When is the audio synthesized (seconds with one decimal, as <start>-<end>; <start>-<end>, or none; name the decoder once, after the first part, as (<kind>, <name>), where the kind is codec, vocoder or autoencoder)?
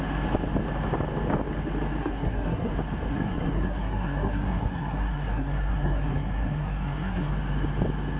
2.0-2.7 (codec, SNAC); 3.1-7.3